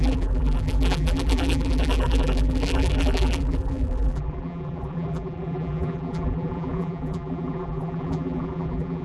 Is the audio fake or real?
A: fake